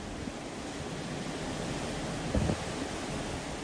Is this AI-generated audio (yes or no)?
no